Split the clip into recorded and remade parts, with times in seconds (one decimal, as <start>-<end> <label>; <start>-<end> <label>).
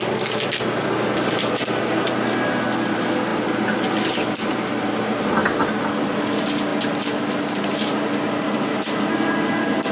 0.0-9.9 recorded